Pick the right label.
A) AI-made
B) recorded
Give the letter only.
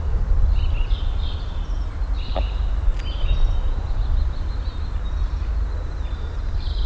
B